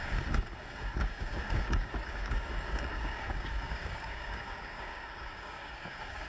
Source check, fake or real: fake